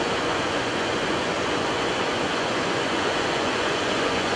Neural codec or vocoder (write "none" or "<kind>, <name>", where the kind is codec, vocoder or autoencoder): vocoder, Vocos